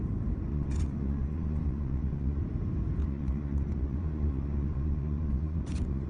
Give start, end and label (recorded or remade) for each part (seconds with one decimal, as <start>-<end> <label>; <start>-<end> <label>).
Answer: 0.0-0.5 recorded; 0.5-2.4 remade; 2.4-3.0 recorded; 3.0-6.1 remade